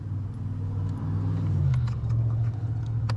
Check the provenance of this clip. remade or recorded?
recorded